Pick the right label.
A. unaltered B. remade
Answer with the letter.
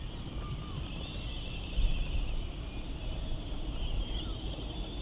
B